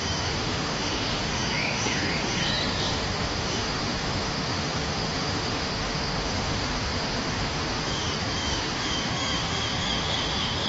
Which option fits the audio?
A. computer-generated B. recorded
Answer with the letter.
A